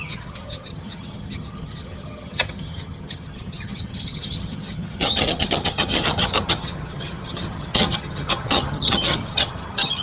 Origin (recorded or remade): remade